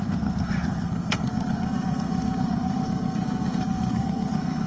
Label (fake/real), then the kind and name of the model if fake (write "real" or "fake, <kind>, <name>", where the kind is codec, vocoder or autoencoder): fake, codec, SNAC